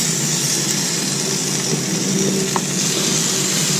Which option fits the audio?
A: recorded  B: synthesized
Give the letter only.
A